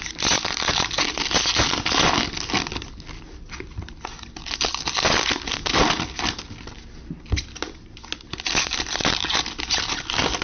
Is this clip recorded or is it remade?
recorded